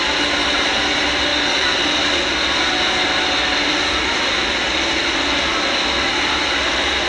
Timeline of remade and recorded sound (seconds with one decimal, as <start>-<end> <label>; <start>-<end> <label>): 0.0-7.1 recorded